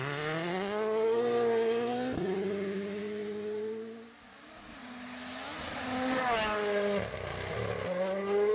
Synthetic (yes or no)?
no